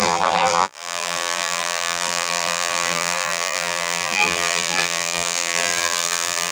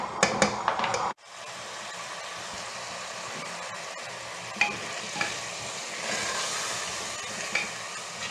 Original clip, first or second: second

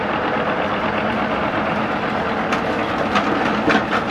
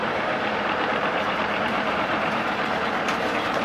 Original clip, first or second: first